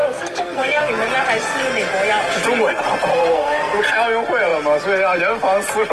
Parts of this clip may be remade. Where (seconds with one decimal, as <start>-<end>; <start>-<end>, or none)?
0.0-0.9; 3.1-3.8